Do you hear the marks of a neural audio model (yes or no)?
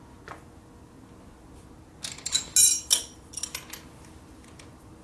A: no